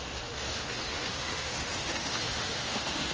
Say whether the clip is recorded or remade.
remade